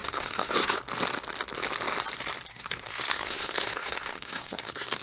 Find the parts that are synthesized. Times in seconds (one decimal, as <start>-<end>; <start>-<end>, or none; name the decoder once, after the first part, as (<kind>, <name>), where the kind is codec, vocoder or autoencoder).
0.0-0.8 (codec, SNAC); 2.5-5.0